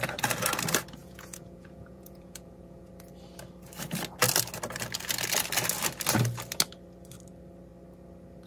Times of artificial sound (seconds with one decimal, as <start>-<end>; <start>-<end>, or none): 1.0-2.9